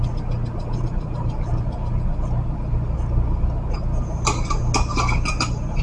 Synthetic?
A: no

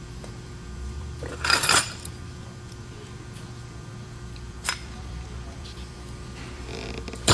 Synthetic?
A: yes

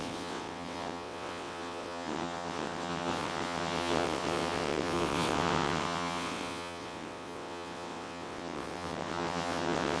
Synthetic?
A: yes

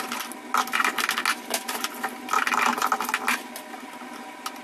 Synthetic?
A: no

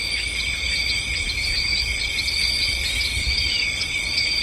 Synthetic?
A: no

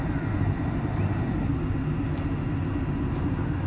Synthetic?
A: no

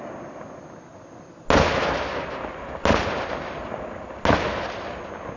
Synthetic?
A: no